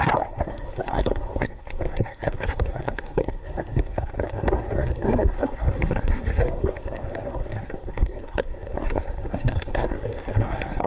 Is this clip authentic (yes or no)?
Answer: no